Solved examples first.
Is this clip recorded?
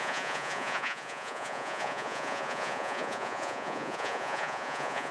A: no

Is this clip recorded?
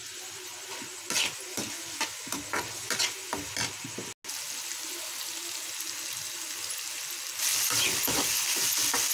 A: yes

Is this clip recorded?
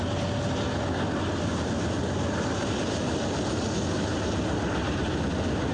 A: yes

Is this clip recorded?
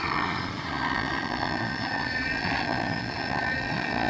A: no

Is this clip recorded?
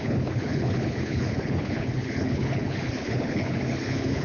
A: no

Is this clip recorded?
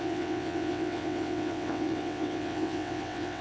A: no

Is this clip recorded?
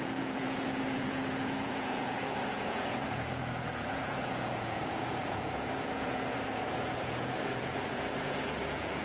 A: no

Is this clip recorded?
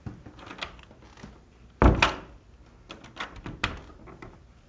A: yes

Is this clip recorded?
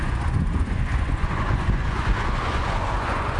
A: no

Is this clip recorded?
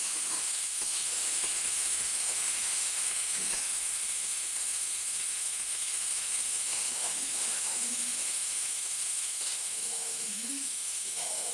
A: no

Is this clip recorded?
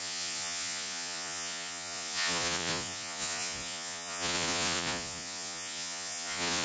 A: no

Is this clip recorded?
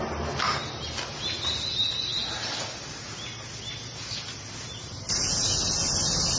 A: yes